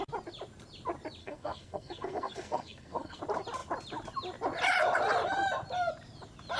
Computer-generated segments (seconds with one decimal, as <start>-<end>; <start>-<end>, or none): 1.2-3.2

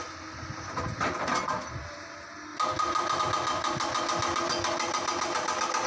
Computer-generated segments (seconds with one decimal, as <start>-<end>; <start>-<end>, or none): none